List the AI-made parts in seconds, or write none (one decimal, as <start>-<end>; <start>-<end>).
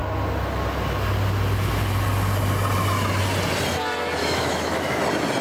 4.2-5.0